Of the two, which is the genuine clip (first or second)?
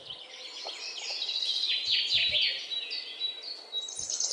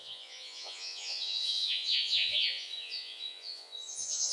first